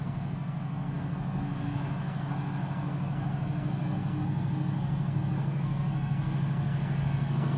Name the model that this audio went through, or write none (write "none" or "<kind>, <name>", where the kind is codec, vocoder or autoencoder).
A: codec, SNAC